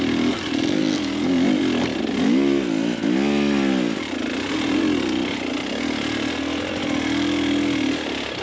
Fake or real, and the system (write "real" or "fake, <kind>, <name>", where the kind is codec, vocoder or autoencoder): real